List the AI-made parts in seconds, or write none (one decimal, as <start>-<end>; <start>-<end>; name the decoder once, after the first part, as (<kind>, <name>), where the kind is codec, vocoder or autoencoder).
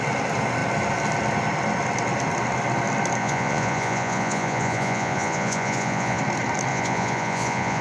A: 3.2-6.2 (vocoder, Vocos); 6.7-7.8